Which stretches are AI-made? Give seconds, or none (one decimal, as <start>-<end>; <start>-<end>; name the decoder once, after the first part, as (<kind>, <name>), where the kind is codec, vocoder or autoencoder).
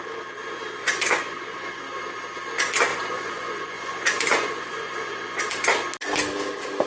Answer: 0.8-1.8 (vocoder, Vocos); 2.9-5.4